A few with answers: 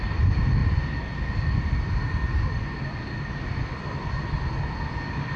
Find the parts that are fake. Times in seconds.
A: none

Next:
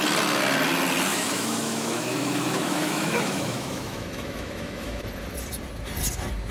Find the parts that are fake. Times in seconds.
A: 1.1-5.0

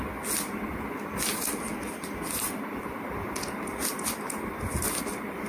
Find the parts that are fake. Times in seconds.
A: none